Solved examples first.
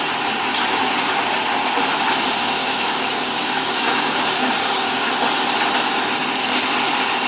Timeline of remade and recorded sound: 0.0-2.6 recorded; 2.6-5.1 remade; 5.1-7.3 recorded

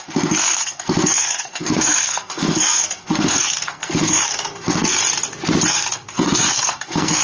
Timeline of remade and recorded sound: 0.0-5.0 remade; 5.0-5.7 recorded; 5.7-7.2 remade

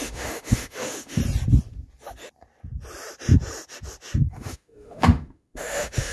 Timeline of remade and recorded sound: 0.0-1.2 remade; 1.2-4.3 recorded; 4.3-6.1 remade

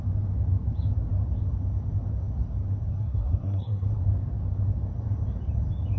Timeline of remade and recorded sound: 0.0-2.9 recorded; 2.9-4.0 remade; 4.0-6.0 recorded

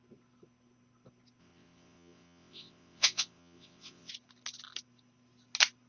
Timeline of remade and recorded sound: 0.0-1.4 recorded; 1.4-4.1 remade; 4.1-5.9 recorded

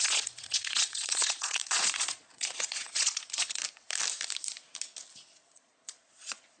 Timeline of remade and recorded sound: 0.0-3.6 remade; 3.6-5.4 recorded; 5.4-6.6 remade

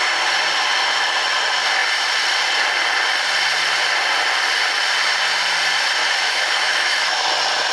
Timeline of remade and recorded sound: 0.0-6.0 recorded; 6.0-7.3 remade; 7.3-7.7 recorded

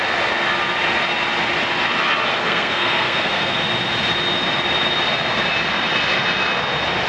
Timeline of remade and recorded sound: 0.0-2.4 recorded; 2.4-3.6 remade; 3.6-7.1 recorded